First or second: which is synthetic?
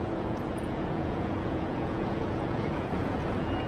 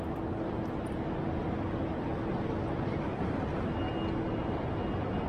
first